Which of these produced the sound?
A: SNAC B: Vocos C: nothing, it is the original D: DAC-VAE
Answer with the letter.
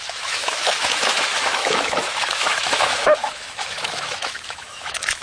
D